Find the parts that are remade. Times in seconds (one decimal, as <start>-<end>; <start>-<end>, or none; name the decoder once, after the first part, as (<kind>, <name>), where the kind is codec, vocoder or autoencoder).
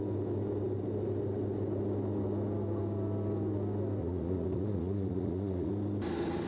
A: 4.0-5.7 (vocoder, Vocos)